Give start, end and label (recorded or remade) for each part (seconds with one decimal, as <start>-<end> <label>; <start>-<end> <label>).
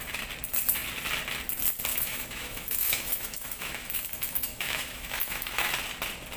0.0-1.9 recorded; 1.9-5.7 remade; 5.7-6.4 recorded